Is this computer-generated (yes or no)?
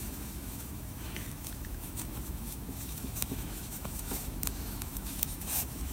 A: yes